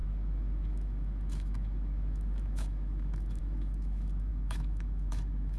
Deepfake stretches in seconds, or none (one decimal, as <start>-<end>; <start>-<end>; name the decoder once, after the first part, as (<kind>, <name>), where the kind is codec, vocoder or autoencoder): 0.0-5.6 (autoencoder, DAC-VAE)